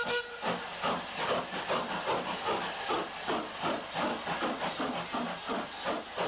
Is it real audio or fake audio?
real